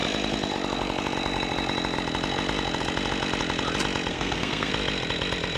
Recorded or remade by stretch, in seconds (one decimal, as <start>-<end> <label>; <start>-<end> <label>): 0.0-4.1 recorded; 4.1-4.7 remade; 4.7-5.6 recorded